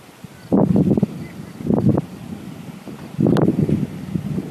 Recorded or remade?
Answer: recorded